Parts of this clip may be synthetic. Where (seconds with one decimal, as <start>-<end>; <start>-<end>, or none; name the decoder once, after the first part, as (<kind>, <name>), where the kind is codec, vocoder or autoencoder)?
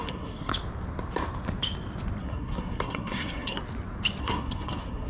0.0-0.5 (codec, SNAC); 2.2-3.6; 4.2-5.1